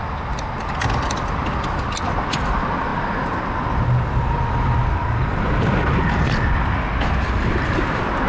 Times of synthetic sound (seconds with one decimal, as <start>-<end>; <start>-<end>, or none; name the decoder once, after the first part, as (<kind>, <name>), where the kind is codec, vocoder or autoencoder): none